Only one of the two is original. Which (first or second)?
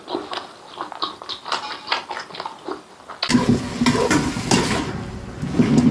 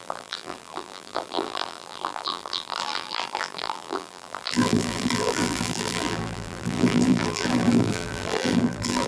first